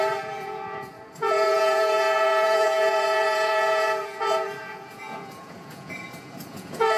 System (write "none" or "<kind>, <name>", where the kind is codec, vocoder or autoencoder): vocoder, Vocos